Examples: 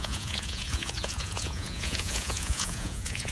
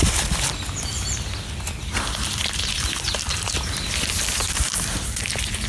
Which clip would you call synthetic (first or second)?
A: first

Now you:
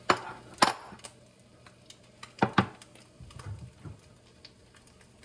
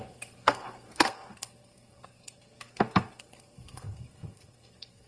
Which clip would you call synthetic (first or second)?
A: second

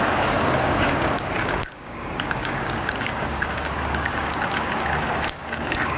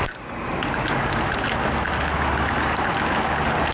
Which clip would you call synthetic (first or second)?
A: first